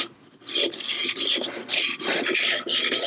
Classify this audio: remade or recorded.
recorded